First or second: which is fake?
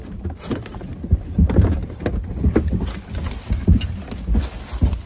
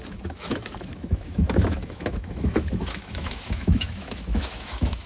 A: second